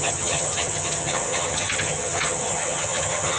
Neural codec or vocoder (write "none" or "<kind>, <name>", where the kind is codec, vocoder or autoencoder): vocoder, HiFi-GAN